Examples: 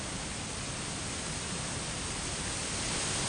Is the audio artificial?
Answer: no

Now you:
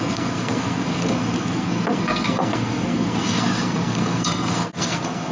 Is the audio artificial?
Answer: yes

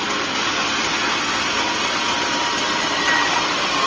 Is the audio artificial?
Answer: no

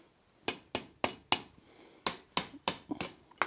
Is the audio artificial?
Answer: no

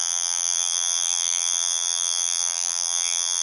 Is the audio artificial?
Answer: yes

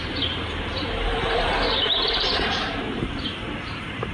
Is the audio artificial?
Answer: yes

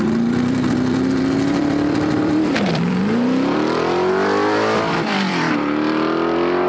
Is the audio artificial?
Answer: yes